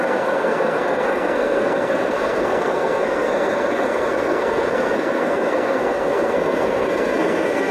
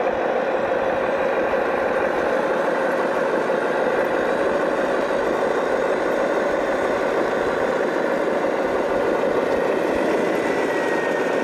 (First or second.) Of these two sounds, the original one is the second